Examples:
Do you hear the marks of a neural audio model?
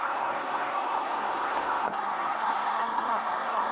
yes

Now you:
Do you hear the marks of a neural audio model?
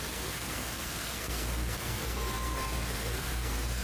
yes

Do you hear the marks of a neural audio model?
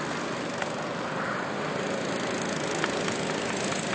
no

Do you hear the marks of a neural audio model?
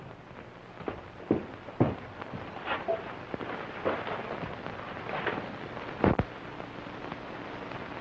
no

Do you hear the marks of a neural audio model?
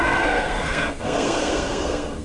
yes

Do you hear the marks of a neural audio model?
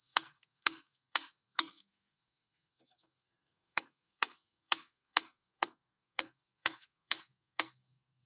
yes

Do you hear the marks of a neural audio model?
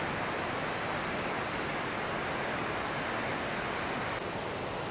no